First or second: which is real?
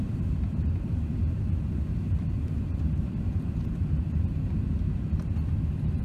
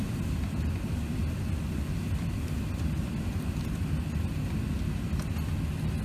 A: second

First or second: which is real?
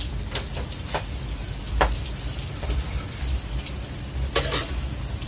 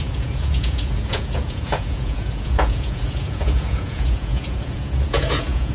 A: first